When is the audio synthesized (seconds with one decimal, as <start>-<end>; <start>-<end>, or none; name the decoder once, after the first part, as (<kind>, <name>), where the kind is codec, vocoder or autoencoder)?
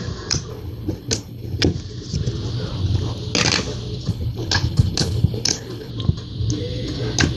0.5-1.6 (codec, HILCodec); 4.1-5.9